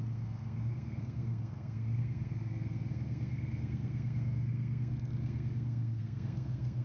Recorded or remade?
remade